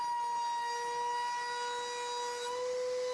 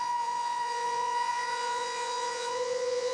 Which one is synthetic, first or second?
second